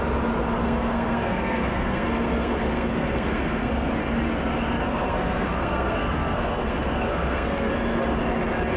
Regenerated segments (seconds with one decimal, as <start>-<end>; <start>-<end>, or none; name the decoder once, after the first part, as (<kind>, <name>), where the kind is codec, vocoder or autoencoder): 0.6-3.7 (codec, SNAC); 4.8-7.7